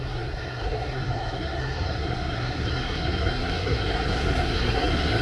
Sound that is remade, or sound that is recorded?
remade